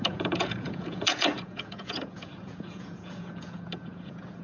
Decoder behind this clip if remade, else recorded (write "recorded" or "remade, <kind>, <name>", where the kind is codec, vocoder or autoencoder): remade, vocoder, Vocos